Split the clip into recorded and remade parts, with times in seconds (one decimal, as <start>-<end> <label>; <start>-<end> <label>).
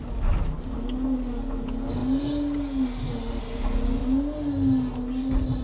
0.0-5.6 recorded